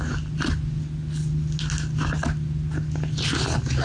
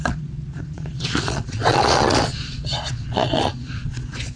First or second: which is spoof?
second